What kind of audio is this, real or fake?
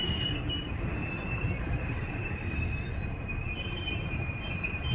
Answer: fake